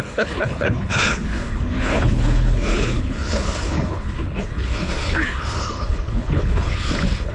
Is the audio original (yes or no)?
no